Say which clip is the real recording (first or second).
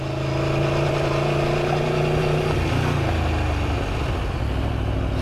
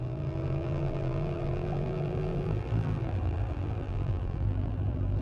first